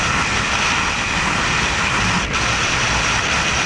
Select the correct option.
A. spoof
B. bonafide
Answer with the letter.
B